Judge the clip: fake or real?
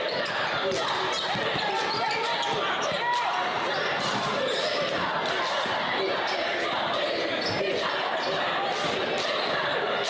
real